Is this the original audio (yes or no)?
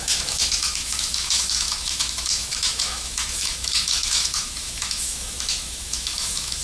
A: no